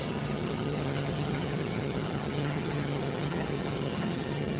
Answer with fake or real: fake